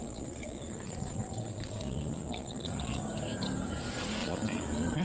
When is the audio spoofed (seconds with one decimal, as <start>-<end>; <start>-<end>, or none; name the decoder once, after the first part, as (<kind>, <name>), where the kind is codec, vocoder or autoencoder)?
0.0-3.0 (vocoder, Vocos); 4.2-5.0